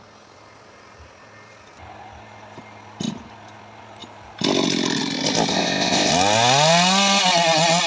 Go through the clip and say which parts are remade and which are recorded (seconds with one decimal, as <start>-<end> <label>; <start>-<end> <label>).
0.0-5.5 recorded; 5.5-6.1 remade; 6.1-7.9 recorded

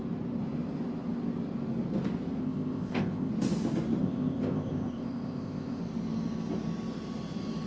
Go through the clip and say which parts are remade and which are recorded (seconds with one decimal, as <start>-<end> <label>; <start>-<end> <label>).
0.0-2.4 recorded; 2.4-3.3 remade; 3.3-4.0 recorded; 4.0-5.8 remade; 5.8-7.7 recorded

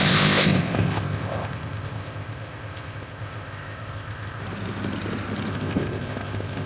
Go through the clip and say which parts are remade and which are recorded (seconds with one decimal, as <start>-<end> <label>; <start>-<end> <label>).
0.0-4.4 remade; 4.4-5.5 recorded; 5.5-6.7 remade

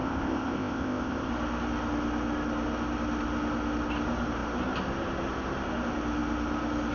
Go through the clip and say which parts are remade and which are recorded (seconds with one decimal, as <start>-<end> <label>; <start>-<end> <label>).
0.0-1.3 remade; 1.3-6.9 recorded